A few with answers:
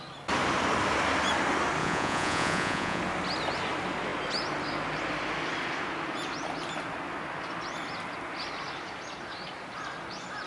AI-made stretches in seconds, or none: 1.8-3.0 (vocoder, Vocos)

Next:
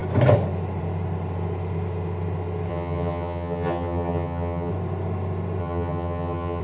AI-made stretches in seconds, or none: 2.7-4.7 (vocoder, HiFi-GAN); 5.6-6.6

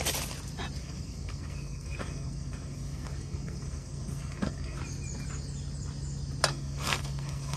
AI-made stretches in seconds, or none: 0.8-4.8 (codec, SNAC); 6.5-7.6

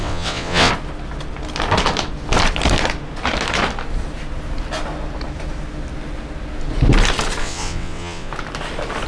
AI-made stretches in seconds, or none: 0.0-0.7 (vocoder, WaveNeXt); 7.4-8.3

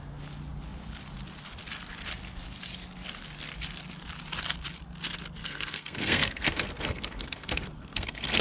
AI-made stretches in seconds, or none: 5.4-8.4 (codec, SNAC)

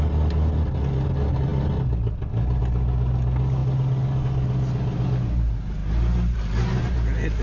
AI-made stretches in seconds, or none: none